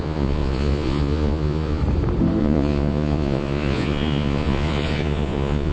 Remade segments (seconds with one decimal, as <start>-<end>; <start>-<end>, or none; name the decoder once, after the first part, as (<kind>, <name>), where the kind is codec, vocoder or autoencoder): 0.0-1.8 (vocoder, Vocos); 2.4-5.7